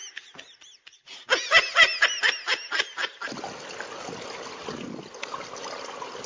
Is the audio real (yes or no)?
yes